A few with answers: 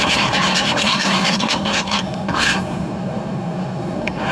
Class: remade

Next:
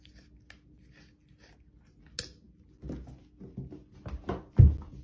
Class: recorded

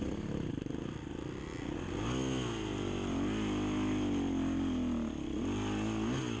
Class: recorded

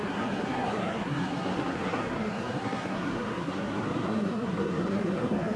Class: remade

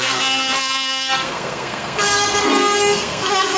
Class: remade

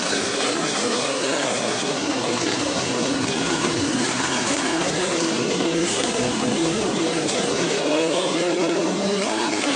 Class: remade